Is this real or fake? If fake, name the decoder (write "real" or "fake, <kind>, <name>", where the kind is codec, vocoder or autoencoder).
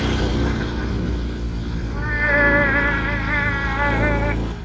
real